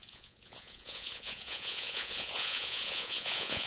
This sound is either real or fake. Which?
fake